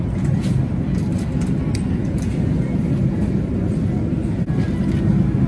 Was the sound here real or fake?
real